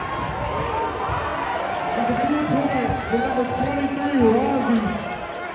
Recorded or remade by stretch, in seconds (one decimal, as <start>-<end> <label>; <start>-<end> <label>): 0.0-5.5 recorded